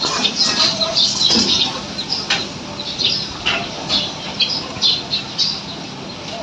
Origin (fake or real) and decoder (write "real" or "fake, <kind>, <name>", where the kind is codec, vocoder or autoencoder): fake, vocoder, BigVGAN v2